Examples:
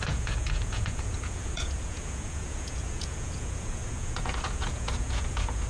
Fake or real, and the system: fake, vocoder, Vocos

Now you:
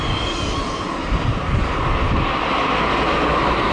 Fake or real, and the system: real